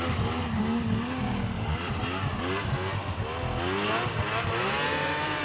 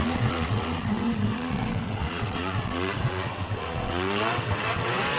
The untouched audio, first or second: first